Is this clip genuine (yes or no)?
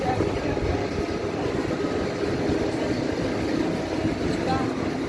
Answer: yes